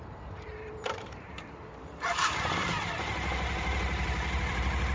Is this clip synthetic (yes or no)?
yes